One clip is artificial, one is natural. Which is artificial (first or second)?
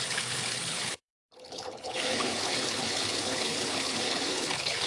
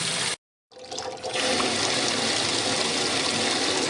first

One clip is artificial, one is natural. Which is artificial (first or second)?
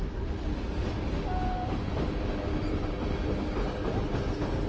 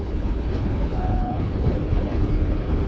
second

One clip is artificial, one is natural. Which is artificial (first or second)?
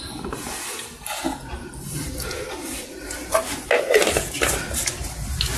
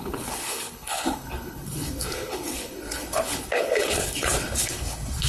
second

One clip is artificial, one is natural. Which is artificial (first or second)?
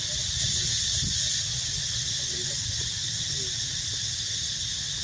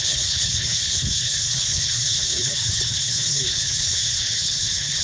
second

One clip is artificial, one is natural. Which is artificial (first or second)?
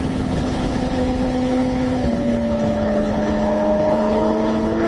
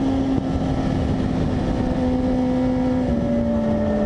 first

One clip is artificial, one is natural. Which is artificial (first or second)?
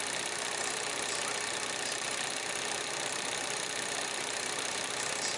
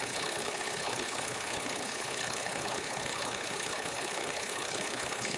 second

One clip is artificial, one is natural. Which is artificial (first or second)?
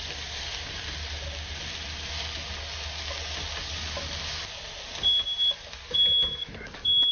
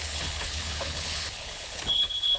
second